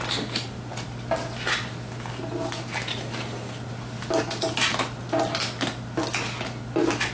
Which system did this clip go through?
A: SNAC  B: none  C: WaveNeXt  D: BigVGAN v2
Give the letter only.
B